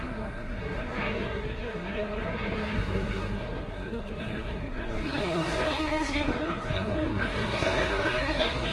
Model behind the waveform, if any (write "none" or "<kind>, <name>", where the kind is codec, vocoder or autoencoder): codec, SNAC